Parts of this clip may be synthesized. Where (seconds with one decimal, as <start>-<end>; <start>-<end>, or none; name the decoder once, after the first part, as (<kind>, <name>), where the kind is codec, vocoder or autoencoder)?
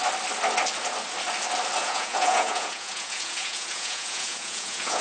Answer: 1.8-5.0 (vocoder, Vocos)